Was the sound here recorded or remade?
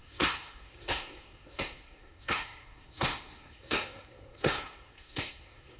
remade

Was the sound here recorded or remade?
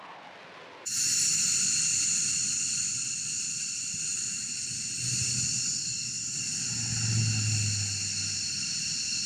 recorded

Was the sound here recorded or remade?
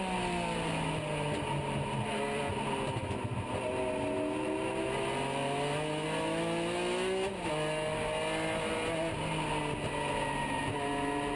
recorded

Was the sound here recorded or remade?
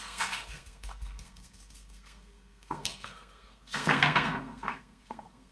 remade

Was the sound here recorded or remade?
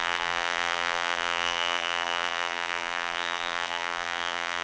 remade